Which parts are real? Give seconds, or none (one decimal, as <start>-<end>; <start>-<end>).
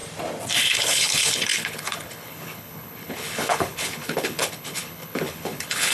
0.0-0.6